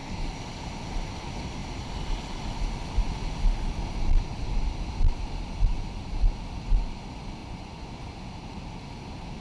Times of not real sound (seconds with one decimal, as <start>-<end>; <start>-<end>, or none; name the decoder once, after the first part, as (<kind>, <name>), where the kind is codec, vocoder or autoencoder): 7.4-8.1 (vocoder, Vocos)